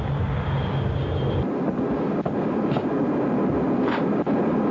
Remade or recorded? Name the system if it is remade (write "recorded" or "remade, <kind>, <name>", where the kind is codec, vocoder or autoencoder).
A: recorded